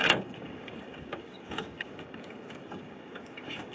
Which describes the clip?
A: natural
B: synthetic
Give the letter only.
B